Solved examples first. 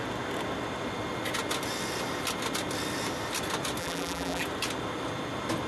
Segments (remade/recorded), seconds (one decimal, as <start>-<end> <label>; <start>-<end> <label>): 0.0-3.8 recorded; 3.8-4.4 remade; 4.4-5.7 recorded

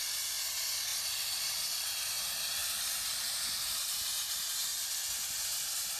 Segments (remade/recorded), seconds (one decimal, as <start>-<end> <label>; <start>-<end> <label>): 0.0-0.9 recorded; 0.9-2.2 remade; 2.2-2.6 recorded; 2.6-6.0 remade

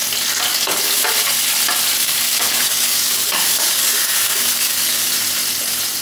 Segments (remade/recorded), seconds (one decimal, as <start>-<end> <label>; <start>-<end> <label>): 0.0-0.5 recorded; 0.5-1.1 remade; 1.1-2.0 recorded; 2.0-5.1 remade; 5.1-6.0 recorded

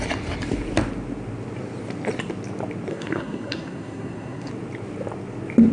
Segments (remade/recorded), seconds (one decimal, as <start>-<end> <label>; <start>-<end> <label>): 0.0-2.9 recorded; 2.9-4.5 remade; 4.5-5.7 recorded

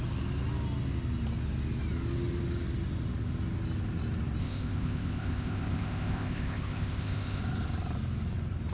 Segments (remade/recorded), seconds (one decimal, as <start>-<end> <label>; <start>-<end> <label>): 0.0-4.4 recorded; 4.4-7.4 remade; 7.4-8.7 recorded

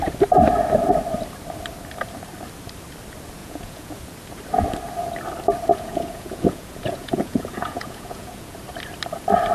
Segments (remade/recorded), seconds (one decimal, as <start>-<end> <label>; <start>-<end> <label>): 0.0-3.4 recorded; 3.4-3.9 remade; 3.9-5.7 recorded; 5.7-8.6 remade; 8.6-9.5 recorded